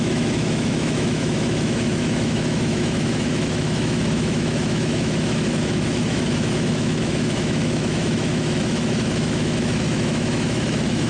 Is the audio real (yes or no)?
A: no